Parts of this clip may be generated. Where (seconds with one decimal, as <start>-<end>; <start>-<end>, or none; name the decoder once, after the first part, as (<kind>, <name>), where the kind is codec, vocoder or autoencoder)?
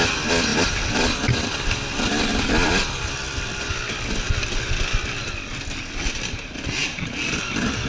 none